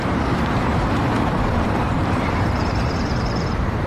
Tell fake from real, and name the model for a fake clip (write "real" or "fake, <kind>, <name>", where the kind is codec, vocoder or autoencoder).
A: fake, vocoder, BigVGAN v2